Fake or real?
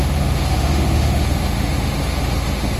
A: fake